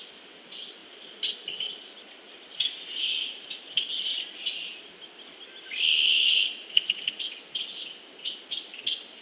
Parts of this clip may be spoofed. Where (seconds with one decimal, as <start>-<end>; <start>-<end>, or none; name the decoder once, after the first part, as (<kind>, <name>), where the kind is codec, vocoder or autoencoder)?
none